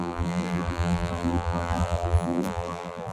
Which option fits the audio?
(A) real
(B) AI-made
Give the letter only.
B